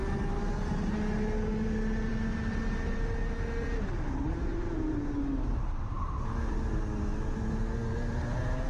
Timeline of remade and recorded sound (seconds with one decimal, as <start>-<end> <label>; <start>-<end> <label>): 0.0-8.7 recorded